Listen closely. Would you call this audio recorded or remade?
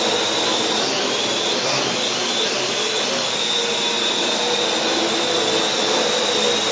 recorded